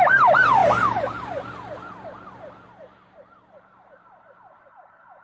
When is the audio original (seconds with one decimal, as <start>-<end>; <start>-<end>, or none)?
0.6-1.2